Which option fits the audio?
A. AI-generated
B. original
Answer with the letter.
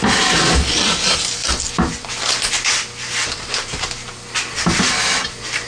B